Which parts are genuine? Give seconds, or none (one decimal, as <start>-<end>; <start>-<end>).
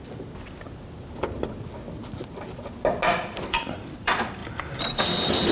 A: 0.0-3.3